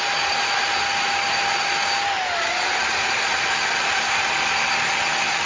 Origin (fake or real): real